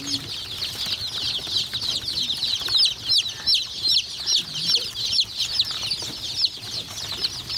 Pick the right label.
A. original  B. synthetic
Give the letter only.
A